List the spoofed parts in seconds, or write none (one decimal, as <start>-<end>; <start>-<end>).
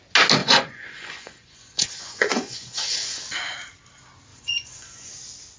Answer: 0.4-3.2; 4.3-5.1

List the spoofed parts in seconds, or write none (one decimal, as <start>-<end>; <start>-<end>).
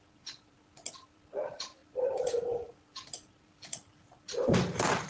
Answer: none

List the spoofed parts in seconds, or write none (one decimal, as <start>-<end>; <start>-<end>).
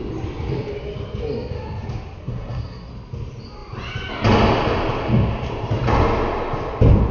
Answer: 2.2-2.9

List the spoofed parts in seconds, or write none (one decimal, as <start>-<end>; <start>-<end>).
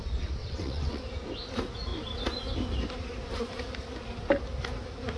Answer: 0.4-1.0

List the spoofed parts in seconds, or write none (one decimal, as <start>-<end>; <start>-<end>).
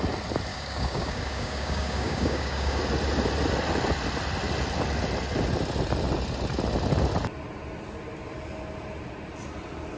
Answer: 0.5-2.8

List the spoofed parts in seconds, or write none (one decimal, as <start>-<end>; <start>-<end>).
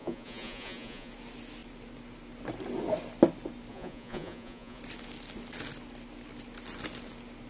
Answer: 0.0-1.1; 3.7-4.8